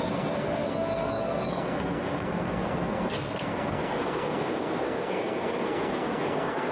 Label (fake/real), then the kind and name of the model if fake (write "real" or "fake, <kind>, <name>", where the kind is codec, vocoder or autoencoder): fake, codec, SNAC